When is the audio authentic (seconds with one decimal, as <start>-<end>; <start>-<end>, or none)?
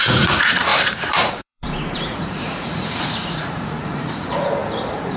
0.7-1.3